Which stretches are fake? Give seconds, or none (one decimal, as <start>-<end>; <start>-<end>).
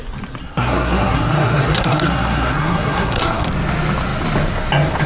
0.4-3.5